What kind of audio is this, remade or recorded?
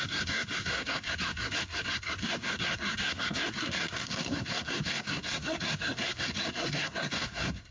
remade